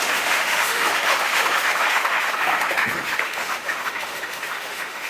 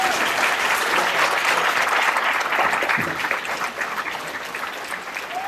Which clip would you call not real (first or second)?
first